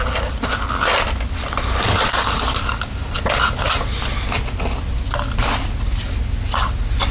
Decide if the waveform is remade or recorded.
recorded